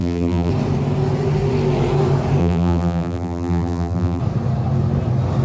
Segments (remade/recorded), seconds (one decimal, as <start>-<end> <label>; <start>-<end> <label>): 0.0-0.5 remade; 0.5-2.4 recorded; 2.4-4.2 remade; 4.2-5.4 recorded